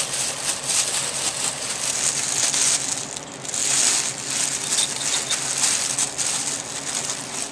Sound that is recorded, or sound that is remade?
recorded